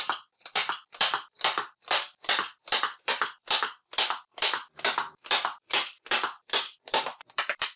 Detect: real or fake fake